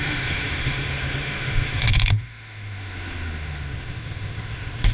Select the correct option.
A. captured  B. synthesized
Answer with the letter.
B